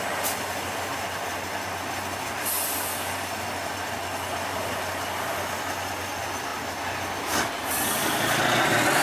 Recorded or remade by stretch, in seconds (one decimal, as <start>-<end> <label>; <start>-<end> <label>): 0.0-9.0 recorded